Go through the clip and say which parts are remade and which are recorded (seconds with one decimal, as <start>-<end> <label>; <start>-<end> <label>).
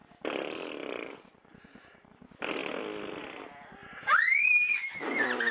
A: 0.0-0.8 recorded; 0.8-2.1 remade; 2.1-3.8 recorded; 3.8-4.5 remade; 4.5-5.5 recorded